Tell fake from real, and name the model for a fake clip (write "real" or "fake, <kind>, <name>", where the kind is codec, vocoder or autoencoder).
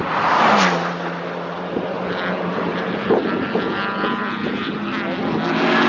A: fake, vocoder, BigVGAN v2